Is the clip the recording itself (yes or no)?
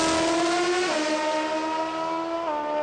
yes